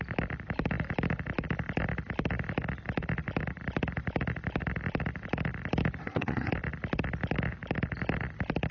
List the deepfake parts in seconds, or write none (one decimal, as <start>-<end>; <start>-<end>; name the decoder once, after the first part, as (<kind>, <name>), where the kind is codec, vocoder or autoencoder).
6.0-6.5 (codec, SNAC)